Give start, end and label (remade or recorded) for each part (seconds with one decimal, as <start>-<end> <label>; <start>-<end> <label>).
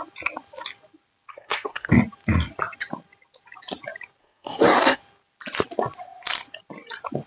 0.0-1.3 recorded; 1.3-1.9 remade; 1.9-4.2 recorded; 4.2-5.0 remade; 5.0-7.3 recorded